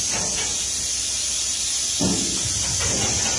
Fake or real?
real